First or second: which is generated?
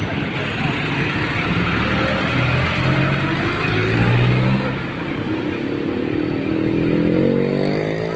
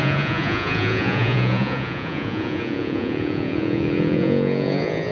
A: second